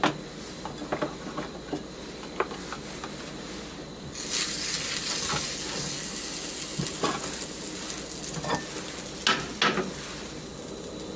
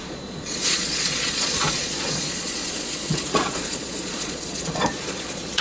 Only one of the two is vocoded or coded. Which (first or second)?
second